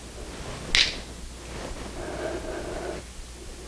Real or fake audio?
real